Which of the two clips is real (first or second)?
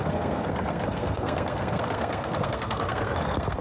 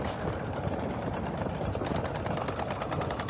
second